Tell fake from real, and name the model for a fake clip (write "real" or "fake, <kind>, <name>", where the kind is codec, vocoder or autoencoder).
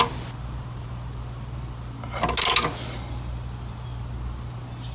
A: real